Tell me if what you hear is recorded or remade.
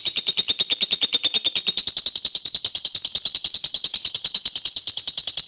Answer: recorded